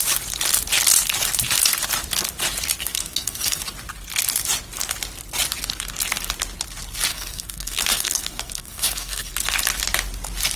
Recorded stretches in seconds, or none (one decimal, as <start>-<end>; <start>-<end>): 0.0-2.8; 3.6-7.1; 9.3-10.6